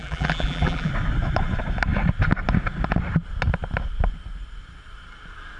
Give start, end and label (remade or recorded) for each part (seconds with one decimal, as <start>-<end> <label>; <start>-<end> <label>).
0.0-0.9 remade; 0.9-5.6 recorded